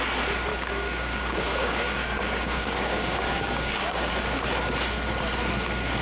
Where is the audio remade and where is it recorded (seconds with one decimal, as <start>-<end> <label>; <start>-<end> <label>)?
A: 0.0-0.5 recorded; 0.5-4.1 remade; 4.1-6.0 recorded